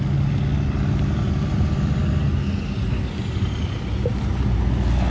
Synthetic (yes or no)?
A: no